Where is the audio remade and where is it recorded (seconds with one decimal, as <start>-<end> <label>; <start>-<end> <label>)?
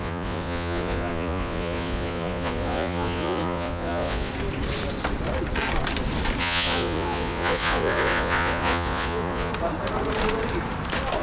0.0-4.3 remade; 4.3-6.4 recorded; 6.4-9.5 remade; 9.5-11.2 recorded